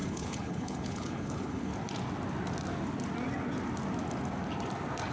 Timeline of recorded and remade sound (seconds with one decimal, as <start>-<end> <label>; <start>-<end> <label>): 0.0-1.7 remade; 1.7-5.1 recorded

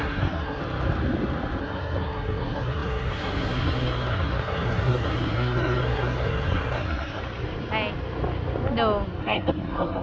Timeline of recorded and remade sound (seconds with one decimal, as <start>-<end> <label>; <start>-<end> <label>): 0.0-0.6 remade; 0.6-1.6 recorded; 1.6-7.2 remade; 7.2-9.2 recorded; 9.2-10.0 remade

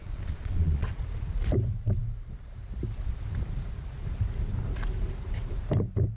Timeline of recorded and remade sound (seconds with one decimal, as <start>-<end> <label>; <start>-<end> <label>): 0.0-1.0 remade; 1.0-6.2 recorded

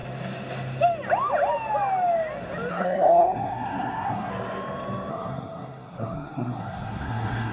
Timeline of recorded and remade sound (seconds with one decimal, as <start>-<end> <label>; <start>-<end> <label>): 0.0-2.7 recorded; 2.7-4.3 remade; 4.3-5.1 recorded; 5.1-7.5 remade